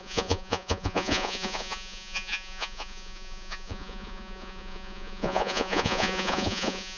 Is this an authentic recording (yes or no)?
no